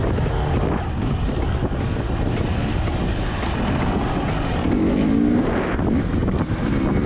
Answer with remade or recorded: recorded